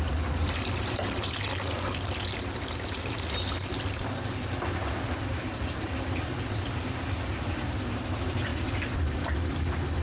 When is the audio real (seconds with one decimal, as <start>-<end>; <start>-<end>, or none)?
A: 0.0-10.0